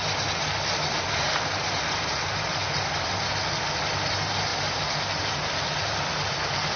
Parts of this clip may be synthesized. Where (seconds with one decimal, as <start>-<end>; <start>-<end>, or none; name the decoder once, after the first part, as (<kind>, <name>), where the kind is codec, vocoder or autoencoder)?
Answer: none